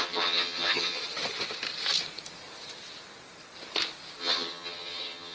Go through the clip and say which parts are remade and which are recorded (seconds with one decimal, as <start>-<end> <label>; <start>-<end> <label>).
0.0-1.0 remade; 1.0-4.2 recorded; 4.2-5.3 remade